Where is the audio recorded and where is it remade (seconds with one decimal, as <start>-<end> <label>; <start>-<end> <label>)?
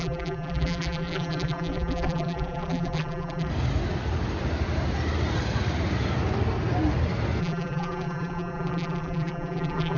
0.0-3.5 remade; 3.5-7.4 recorded; 7.4-10.0 remade